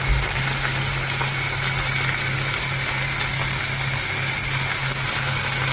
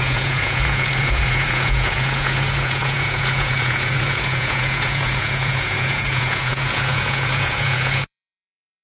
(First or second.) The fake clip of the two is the second